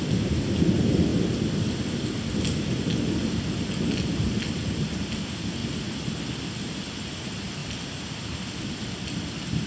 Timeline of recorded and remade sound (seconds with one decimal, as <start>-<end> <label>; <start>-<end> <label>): 0.0-9.7 recorded